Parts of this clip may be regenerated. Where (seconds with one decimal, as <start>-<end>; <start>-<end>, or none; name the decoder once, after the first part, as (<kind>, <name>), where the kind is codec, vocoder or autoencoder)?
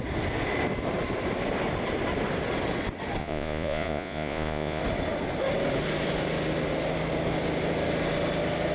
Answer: 3.2-4.8 (vocoder, Vocos)